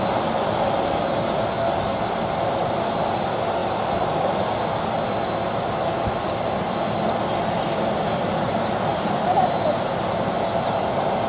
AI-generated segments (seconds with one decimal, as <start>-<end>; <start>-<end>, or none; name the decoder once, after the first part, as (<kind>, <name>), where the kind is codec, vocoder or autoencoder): 3.6-4.1 (vocoder, BigVGAN v2); 8.9-9.6